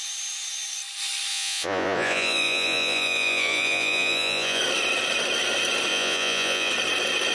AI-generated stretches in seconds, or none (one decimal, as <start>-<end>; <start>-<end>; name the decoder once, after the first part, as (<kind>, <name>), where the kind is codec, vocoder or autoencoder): 1.3-4.6 (vocoder, Vocos); 5.9-6.7

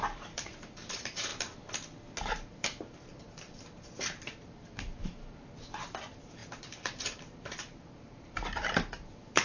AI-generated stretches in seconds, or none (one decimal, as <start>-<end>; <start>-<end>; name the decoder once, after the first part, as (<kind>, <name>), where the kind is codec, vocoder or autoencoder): 0.0-1.3 (vocoder, BigVGAN v2); 2.3-9.4

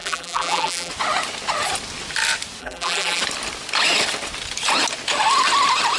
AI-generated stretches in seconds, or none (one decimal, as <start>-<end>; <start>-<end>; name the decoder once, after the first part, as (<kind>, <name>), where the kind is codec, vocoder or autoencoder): 0.0-0.9 (vocoder, BigVGAN v2); 2.6-3.2

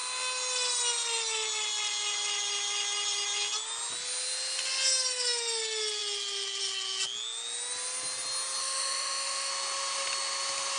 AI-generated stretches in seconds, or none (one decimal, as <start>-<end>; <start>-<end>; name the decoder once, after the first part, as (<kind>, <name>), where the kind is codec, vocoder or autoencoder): 8.6-9.5 (autoencoder, DAC-VAE)

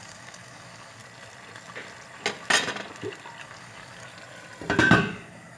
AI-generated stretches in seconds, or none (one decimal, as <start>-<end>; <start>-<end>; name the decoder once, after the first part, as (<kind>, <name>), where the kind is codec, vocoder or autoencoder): 0.0-1.0 (codec, DAC); 3.4-4.1; 5.1-5.6

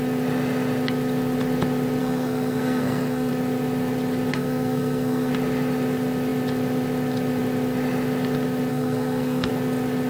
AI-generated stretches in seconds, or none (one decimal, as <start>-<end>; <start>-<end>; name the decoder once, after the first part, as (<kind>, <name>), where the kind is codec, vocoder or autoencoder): 2.0-3.3 (codec, SNAC); 4.3-5.3; 8.7-9.5